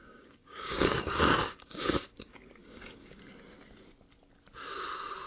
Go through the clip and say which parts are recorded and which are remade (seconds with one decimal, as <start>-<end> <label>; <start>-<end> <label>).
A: 0.0-3.2 remade; 3.2-5.3 recorded